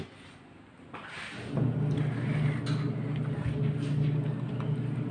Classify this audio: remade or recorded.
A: recorded